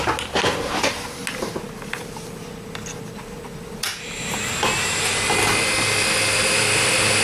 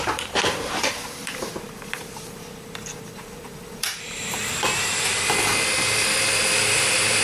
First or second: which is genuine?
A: first